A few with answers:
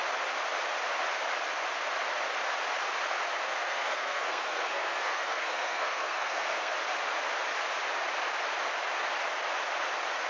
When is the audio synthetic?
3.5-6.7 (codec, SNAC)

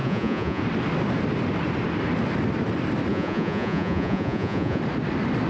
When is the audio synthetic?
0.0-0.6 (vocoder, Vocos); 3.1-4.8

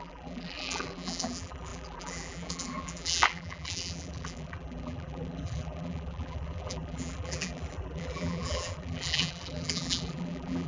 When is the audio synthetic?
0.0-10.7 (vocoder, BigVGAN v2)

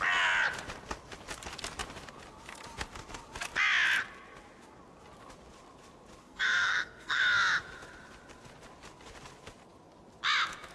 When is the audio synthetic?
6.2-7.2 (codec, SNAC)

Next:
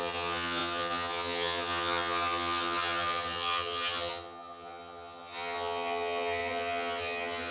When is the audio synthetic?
0.0-7.5 (vocoder, HiFi-GAN)

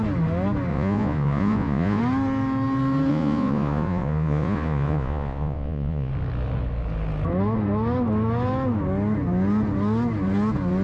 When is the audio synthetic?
0.7-2.0 (vocoder, Vocos); 3.1-6.1

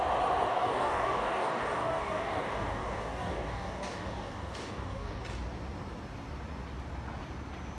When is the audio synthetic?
0.5-5.2 (codec, DAC)